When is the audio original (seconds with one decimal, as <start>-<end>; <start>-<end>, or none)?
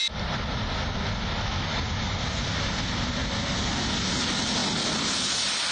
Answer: 0.0-5.7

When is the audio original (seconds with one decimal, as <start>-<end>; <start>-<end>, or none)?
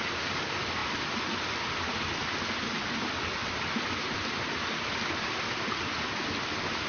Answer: 0.0-6.9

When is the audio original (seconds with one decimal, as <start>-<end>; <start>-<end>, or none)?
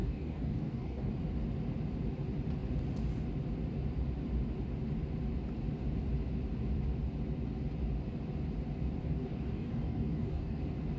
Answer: 1.1-9.0; 10.6-11.0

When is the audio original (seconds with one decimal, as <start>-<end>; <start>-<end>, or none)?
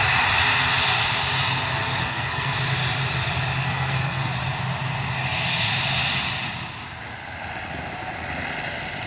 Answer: 0.0-2.0; 2.6-3.6; 4.3-9.1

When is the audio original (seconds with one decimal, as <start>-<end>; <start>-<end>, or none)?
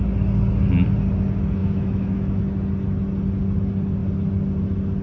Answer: 0.0-1.6; 2.4-5.0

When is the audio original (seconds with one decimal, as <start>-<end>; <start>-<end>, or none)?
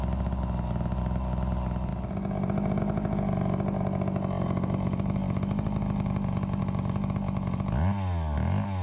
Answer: 0.0-8.8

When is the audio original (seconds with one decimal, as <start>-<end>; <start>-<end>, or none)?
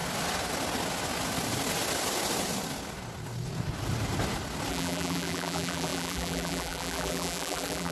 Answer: 0.0-4.7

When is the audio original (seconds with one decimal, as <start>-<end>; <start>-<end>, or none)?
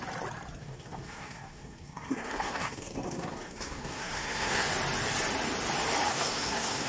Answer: 0.0-0.6; 4.7-6.1